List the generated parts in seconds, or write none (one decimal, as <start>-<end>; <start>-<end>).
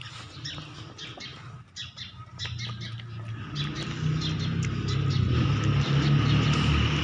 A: none